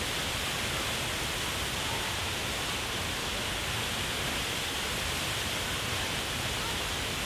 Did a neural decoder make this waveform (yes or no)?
no